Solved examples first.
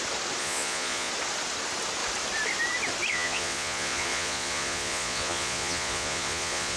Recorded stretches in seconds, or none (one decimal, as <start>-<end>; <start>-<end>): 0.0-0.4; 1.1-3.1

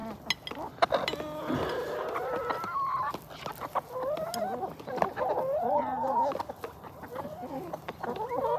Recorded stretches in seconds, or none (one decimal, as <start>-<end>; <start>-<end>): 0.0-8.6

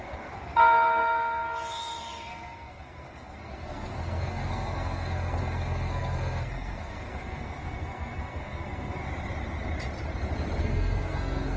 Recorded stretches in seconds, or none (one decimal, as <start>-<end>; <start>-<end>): 9.0-10.6